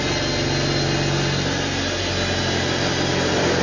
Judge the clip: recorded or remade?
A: recorded